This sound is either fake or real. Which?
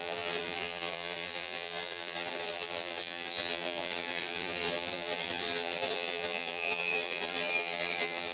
fake